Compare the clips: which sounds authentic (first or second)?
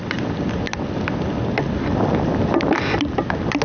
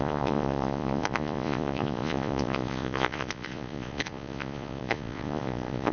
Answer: first